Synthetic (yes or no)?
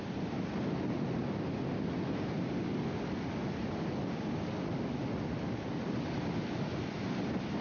no